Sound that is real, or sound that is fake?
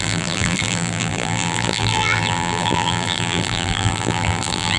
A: fake